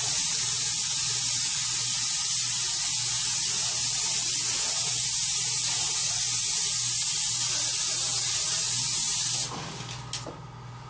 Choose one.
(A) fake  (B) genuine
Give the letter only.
B